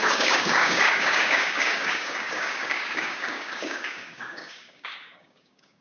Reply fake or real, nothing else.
fake